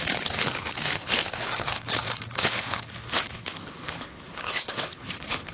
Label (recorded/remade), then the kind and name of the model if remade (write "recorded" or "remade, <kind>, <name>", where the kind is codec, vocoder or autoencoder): remade, codec, HILCodec